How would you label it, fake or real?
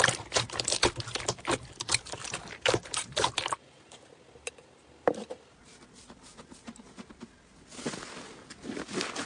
real